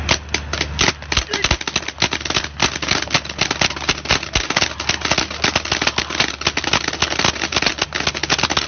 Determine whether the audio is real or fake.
real